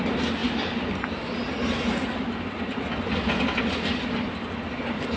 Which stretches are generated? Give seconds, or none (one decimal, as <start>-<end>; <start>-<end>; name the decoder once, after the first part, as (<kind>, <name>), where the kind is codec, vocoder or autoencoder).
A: none